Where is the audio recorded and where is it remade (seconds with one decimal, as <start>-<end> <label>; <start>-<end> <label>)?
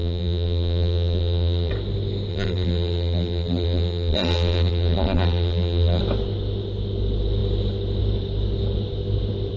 0.0-1.7 remade; 1.7-2.3 recorded; 2.3-6.0 remade; 6.0-9.6 recorded